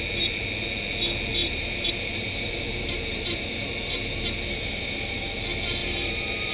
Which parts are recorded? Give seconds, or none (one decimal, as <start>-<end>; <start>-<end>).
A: 0.0-1.4; 5.3-5.8

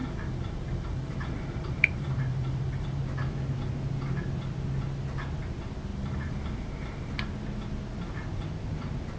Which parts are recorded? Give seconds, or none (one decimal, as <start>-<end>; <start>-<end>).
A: 3.0-5.9; 7.1-9.2

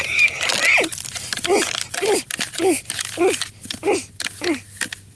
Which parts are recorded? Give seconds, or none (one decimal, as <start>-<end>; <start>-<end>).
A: 0.0-0.7; 1.3-5.2

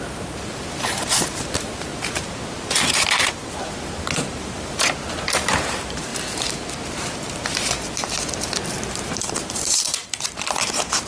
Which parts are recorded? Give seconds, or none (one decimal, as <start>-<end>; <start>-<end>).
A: 1.9-3.3; 6.1-8.7